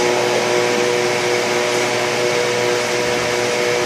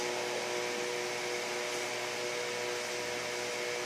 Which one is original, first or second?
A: second